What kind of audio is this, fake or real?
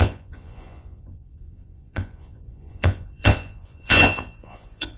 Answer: fake